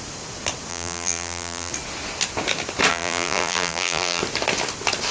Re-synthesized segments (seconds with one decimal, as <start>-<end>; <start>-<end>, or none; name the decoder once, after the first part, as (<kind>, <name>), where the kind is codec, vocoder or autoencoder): 0.7-1.7 (vocoder, BigVGAN v2); 2.9-4.2